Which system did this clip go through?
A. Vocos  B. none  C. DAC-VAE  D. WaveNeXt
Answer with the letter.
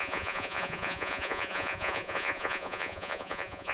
A